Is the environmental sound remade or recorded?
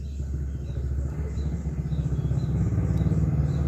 recorded